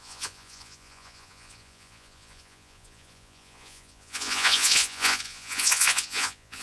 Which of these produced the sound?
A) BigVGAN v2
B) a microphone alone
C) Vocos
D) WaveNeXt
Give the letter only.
C